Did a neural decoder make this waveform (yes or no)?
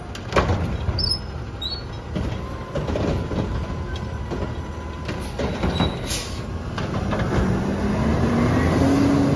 no